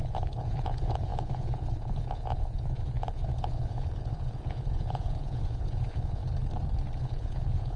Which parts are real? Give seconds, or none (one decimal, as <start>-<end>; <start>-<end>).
6.2-7.0